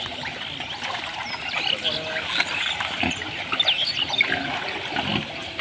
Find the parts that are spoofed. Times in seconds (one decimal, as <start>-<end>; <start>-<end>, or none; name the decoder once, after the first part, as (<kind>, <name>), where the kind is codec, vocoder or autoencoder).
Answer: none